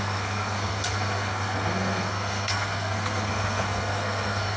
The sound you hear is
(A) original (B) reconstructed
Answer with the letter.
B